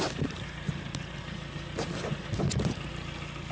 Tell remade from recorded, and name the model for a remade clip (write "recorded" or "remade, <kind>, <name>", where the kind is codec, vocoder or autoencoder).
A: recorded